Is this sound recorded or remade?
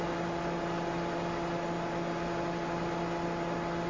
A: recorded